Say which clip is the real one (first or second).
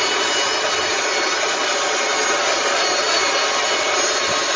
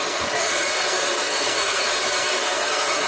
first